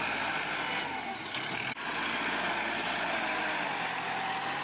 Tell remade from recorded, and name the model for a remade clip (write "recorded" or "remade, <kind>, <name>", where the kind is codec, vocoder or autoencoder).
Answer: recorded